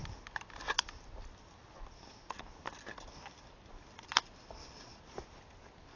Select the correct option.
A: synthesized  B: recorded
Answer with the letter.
B